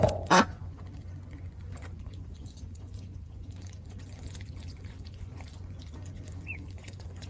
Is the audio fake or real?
fake